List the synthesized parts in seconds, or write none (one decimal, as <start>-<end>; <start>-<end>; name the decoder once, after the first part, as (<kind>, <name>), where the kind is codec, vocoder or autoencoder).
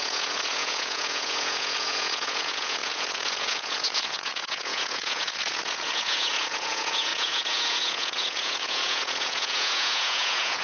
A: 0.0-10.6 (vocoder, Vocos)